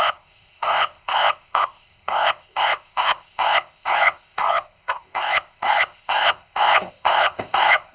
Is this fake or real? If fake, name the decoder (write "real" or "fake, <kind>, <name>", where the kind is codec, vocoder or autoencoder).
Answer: fake, codec, ZipCodec